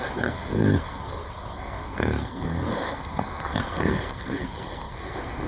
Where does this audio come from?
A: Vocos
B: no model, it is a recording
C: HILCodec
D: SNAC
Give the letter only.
D